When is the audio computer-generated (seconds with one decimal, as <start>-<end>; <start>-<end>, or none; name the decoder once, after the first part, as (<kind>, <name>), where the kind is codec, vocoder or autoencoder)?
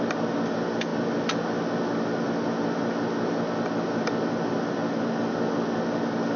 none